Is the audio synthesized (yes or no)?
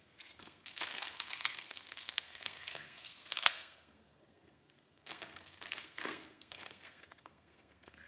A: yes